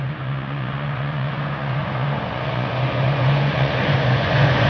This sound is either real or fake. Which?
fake